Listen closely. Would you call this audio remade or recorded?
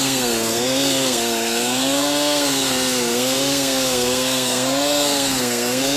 remade